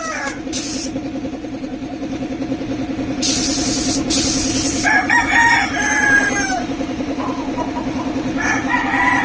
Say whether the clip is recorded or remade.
remade